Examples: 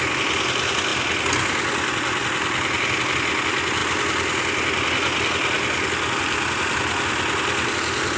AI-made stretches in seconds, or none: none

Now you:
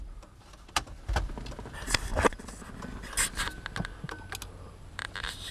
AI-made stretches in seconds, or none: 0.0-2.1 (vocoder, BigVGAN v2); 4.8-5.5

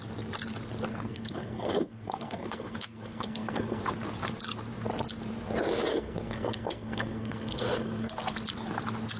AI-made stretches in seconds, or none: 0.9-3.8 (codec, SNAC); 5.9-8.1

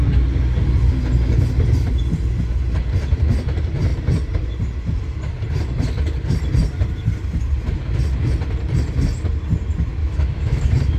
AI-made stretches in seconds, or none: 10.0-10.6 (autoencoder, DAC-VAE)

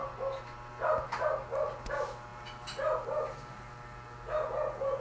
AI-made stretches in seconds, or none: none

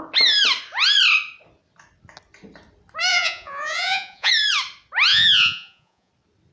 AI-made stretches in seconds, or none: 3.1-4.3 (vocoder, Vocos); 5.1-6.1

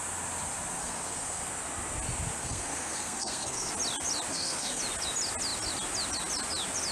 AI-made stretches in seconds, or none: 0.8-1.4 (codec, SNAC); 2.4-3.7; 4.3-4.8

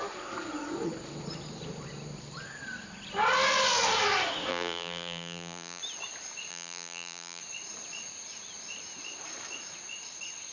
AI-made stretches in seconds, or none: 4.5-5.8 (vocoder, BigVGAN v2); 6.5-7.4